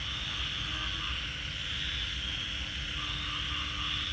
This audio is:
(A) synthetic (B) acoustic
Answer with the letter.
B